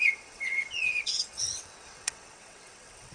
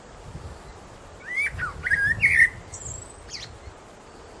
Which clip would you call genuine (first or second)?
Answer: second